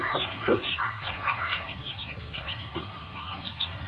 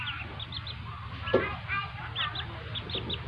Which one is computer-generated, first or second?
first